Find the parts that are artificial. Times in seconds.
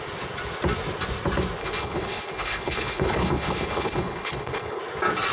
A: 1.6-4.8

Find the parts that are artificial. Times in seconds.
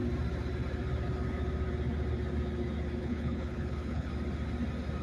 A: 3.0-4.1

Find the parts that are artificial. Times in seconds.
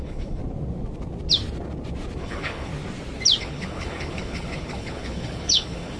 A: 0.0-0.4; 2.2-2.7; 3.4-6.0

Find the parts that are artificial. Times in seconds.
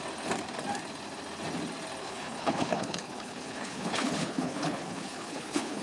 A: 2.0-5.8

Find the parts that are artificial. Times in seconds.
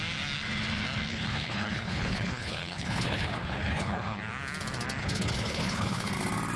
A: 1.1-4.2; 5.0-6.1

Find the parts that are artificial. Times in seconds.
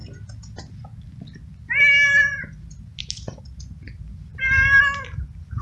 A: none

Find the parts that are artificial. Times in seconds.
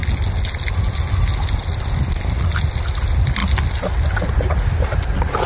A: none